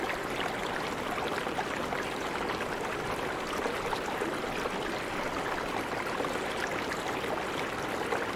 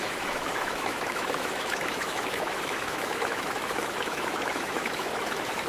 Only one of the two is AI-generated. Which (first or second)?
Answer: second